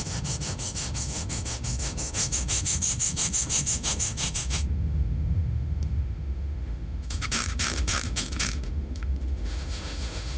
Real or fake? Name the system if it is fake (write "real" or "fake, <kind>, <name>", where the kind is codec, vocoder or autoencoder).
fake, autoencoder, DAC-VAE